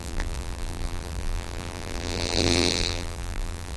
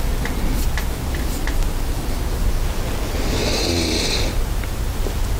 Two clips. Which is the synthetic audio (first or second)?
first